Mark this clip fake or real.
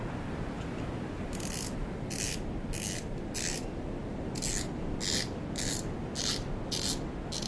real